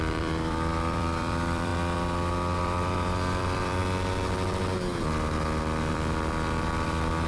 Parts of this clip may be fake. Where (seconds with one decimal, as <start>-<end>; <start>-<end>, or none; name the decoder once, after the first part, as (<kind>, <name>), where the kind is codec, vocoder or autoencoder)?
0.0-1.7 (vocoder, BigVGAN v2); 2.6-3.8; 5.9-7.3